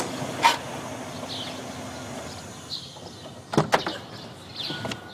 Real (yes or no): yes